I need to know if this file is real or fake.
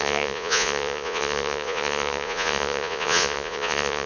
fake